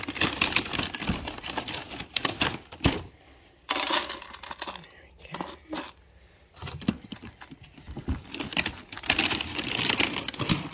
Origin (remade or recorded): recorded